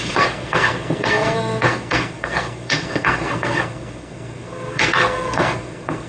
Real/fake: fake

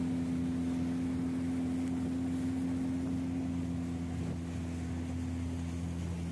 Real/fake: real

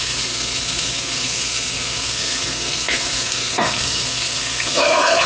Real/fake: fake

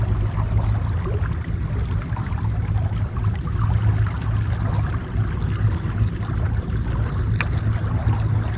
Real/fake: real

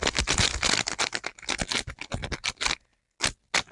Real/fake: real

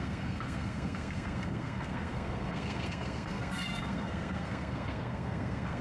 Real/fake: fake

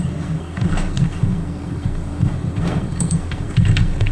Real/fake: fake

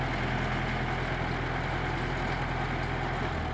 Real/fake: real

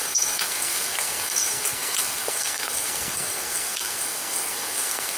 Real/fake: fake